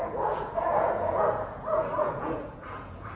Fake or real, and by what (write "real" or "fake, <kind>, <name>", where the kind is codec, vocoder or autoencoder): fake, vocoder, Vocos